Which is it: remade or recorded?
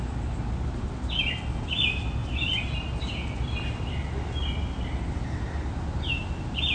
recorded